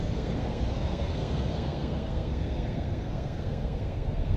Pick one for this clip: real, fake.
fake